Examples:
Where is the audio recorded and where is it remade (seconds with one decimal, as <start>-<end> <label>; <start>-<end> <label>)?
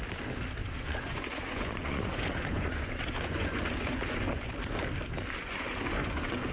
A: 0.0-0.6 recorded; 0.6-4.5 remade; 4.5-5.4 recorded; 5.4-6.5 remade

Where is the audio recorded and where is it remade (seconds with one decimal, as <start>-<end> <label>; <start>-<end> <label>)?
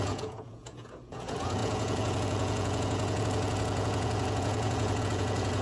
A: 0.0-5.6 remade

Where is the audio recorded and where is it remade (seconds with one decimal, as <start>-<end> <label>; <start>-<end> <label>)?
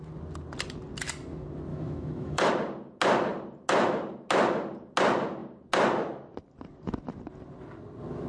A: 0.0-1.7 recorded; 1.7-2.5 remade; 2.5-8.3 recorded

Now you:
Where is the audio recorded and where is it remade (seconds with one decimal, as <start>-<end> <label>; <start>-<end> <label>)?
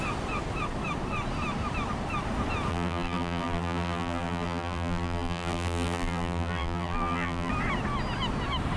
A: 0.0-2.7 recorded; 2.7-7.5 remade; 7.5-8.8 recorded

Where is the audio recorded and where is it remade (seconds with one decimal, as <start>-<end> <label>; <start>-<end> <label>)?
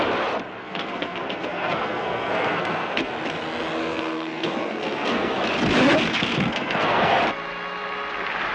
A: 0.0-0.6 recorded; 0.6-3.1 remade; 3.1-3.8 recorded; 3.8-5.4 remade; 5.4-6.1 recorded; 6.1-7.2 remade; 7.2-8.5 recorded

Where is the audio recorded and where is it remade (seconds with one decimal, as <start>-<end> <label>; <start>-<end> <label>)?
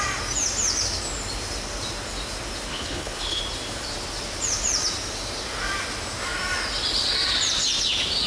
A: 0.0-2.7 recorded; 2.7-3.4 remade; 3.4-8.3 recorded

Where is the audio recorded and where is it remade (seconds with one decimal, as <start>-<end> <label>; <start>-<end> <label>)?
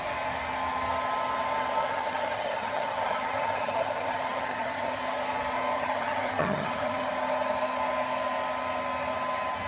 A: 0.0-1.8 recorded; 1.8-5.0 remade; 5.0-5.7 recorded; 5.7-7.1 remade; 7.1-9.7 recorded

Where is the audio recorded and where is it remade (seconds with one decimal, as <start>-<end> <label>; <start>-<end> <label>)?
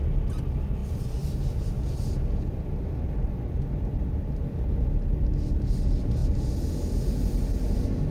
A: 0.0-8.1 recorded